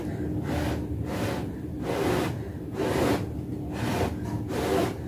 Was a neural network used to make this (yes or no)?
no